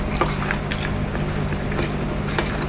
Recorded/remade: recorded